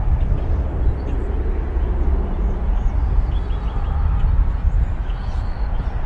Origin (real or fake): real